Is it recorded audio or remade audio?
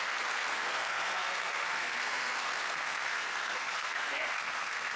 remade